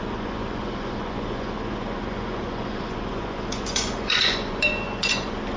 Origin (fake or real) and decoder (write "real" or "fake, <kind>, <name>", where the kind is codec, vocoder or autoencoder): fake, vocoder, Vocos